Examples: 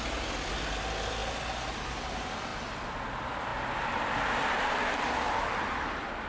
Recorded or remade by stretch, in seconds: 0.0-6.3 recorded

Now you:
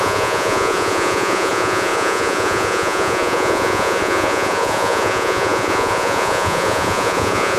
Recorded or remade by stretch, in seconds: 0.0-7.6 remade

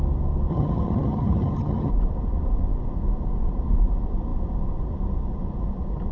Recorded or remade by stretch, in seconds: 0.0-0.5 recorded; 0.5-1.9 remade; 1.9-6.1 recorded

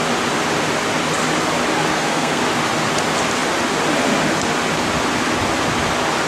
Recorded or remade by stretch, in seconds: 0.0-1.9 recorded; 1.9-2.4 remade; 2.4-6.3 recorded